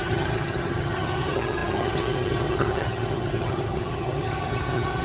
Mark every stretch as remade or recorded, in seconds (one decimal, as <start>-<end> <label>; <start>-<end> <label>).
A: 0.0-5.0 remade